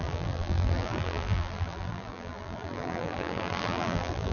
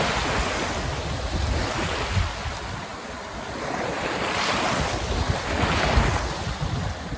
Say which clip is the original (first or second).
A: second